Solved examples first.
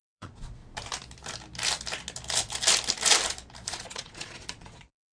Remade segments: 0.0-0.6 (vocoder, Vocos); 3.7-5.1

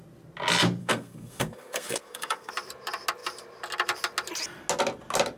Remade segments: 0.8-2.5 (codec, SNAC)

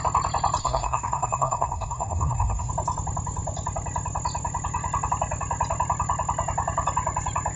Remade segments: 0.6-2.7 (codec, SNAC)

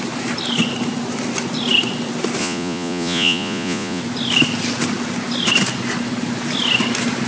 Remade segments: 2.4-4.0 (vocoder, Vocos)

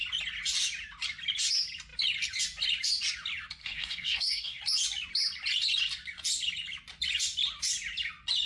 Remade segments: 3.6-4.6 (codec, SNAC)

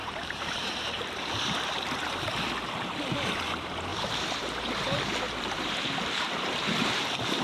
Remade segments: 0.0-1.2 (vocoder, BigVGAN v2); 3.9-6.7

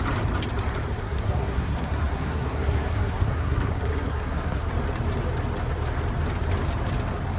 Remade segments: 1.0-4.7 (codec, SNAC)

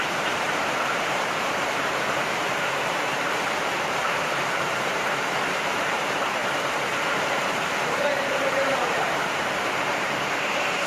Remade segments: 0.0-6.4 (vocoder, BigVGAN v2); 7.3-10.9